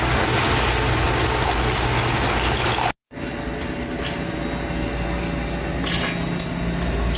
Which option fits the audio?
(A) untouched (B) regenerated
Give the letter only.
A